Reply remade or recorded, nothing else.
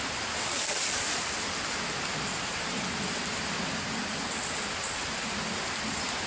recorded